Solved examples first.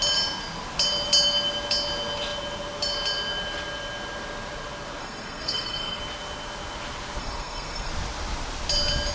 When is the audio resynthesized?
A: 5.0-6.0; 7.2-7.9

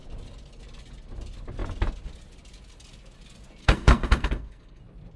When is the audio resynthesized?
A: 3.6-4.8

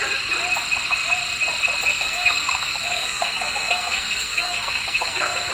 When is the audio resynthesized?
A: 1.9-5.5

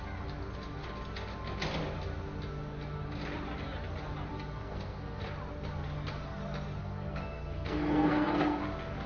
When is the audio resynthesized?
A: 4.3-5.2; 6.8-8.6

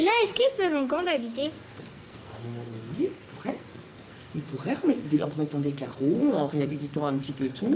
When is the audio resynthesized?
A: 0.0-7.8

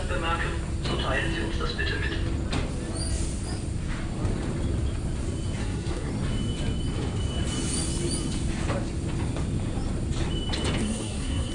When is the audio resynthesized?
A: 5.6-6.1; 10.8-11.5

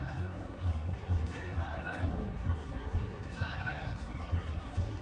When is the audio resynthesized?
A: 0.0-5.0